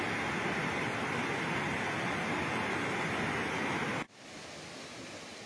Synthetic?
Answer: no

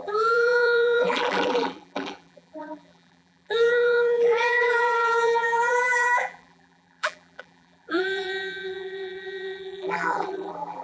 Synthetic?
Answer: yes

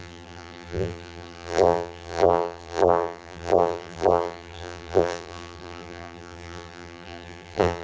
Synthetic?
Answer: yes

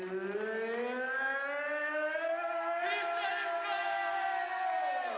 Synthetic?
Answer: no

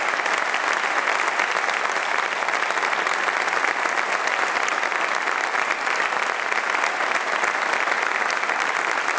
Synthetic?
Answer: no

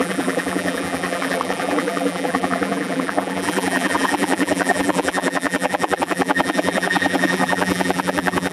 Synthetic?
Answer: yes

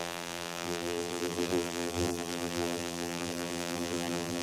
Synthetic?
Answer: yes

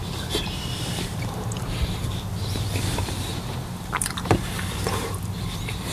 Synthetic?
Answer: yes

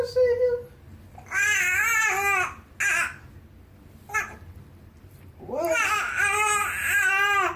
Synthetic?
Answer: no